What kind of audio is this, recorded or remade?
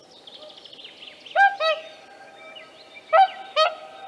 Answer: recorded